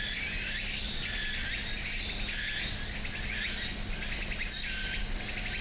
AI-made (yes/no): no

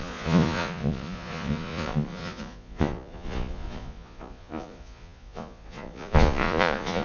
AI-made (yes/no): yes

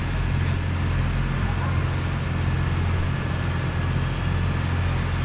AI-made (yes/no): no